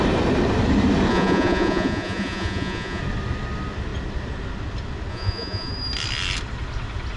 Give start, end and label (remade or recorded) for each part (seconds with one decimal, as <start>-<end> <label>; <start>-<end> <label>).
0.0-1.1 recorded; 1.1-3.0 remade; 3.0-5.1 recorded; 5.1-5.7 remade; 5.7-7.2 recorded